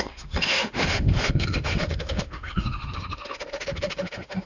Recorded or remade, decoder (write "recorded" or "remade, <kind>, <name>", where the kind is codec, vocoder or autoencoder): remade, autoencoder, DAC-VAE